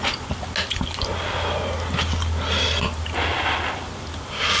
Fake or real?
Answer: real